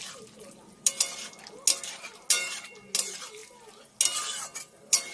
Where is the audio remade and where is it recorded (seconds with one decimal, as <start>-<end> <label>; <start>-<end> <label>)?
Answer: 0.0-5.1 recorded